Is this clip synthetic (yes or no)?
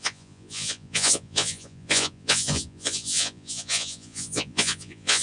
yes